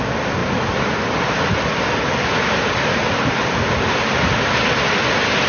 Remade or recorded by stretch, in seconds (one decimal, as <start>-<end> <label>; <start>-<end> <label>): 0.0-0.4 recorded; 0.4-0.9 remade; 0.9-5.5 recorded